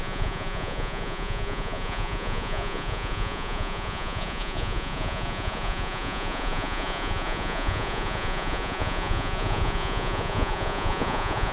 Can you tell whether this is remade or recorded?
remade